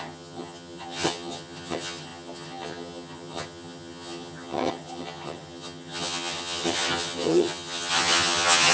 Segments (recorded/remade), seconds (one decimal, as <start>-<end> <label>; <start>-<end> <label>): 0.0-8.7 remade